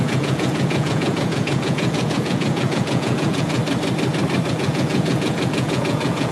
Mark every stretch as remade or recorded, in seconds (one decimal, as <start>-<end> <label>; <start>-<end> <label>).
0.0-3.6 remade; 3.6-4.5 recorded; 4.5-6.3 remade